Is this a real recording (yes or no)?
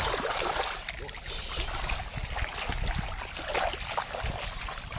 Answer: yes